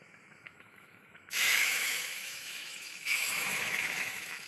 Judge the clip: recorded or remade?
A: remade